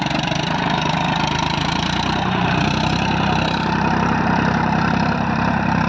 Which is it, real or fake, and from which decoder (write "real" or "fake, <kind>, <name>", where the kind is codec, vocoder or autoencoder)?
fake, vocoder, BigVGAN v2